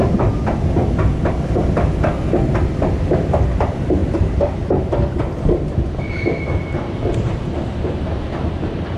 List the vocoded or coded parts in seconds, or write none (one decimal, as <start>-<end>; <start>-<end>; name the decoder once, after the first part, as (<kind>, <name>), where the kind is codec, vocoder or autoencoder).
none